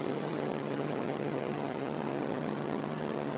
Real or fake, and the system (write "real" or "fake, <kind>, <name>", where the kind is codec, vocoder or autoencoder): fake, vocoder, HiFi-GAN